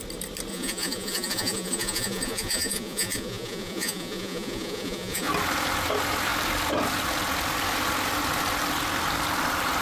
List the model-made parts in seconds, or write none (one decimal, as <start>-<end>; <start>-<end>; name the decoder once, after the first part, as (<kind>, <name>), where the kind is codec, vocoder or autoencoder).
0.5-5.3 (vocoder, Vocos)